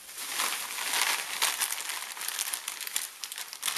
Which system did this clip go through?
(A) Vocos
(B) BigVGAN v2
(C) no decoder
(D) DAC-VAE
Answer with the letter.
C